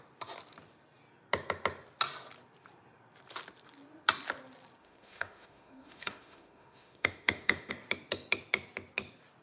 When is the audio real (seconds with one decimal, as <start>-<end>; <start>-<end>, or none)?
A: 0.0-4.8; 7.7-9.4